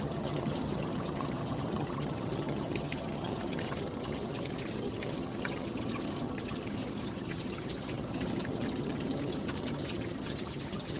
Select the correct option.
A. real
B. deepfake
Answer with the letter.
B